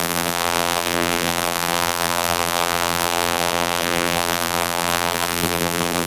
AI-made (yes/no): yes